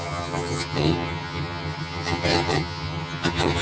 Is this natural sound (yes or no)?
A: no